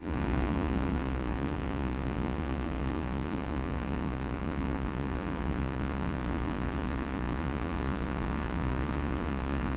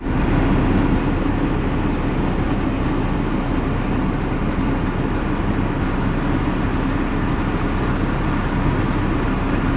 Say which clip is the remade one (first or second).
first